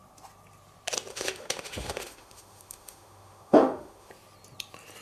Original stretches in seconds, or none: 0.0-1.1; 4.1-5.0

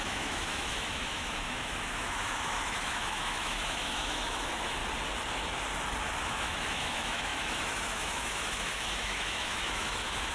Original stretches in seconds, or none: 4.8-6.2

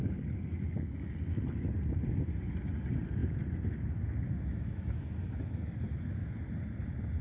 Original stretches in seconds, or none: 0.0-4.5; 5.1-7.2

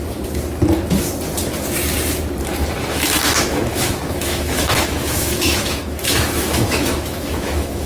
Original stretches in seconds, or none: 0.0-2.9

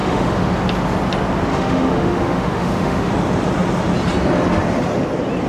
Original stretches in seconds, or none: 0.5-1.5; 3.1-5.5

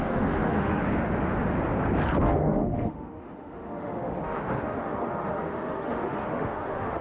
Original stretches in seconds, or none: 0.8-2.2

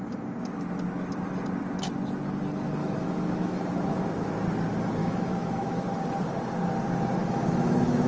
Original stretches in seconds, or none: 0.0-2.8; 4.3-5.0; 6.0-7.2

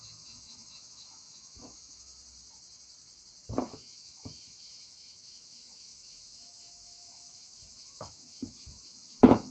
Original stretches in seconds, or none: 2.1-3.6